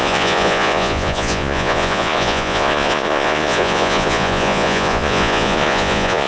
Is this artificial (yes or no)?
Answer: yes